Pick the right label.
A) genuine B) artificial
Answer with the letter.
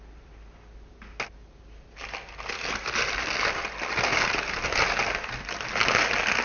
A